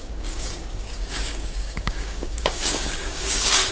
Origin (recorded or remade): remade